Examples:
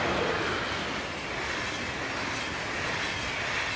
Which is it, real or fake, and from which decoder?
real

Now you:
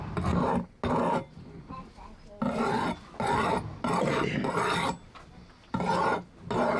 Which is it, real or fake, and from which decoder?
real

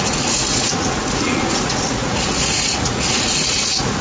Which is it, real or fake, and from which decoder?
fake, vocoder, Vocos